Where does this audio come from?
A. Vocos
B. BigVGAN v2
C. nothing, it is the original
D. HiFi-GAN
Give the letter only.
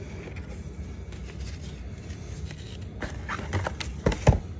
C